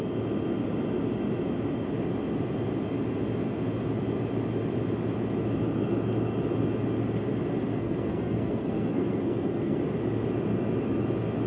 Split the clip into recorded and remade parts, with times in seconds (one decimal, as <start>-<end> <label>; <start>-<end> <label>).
0.0-7.8 recorded; 7.8-9.8 remade; 9.8-11.5 recorded

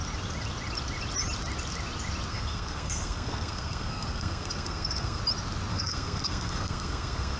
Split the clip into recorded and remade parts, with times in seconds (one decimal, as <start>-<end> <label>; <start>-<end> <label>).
0.0-2.3 recorded; 2.3-5.2 remade; 5.2-5.7 recorded; 5.7-7.4 remade

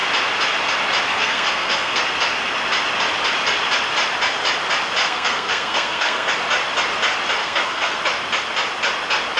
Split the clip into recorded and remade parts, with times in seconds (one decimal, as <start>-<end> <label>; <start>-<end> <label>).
0.0-1.1 recorded; 1.1-2.0 remade; 2.0-5.0 recorded; 5.0-6.3 remade; 6.3-7.4 recorded; 7.4-8.0 remade; 8.0-9.4 recorded

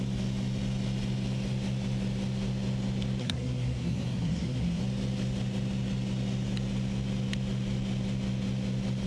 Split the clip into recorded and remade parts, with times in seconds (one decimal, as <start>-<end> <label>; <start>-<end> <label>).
0.0-3.2 recorded; 3.2-4.8 remade; 4.8-9.1 recorded

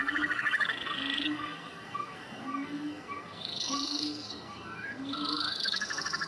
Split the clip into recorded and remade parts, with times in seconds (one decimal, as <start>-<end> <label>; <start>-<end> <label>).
0.0-6.3 remade